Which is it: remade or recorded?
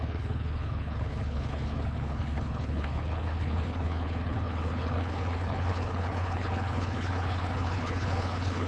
remade